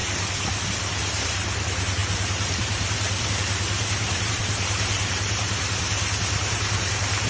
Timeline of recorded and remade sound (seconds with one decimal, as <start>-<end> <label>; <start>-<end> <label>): 0.0-0.8 recorded; 0.8-7.3 remade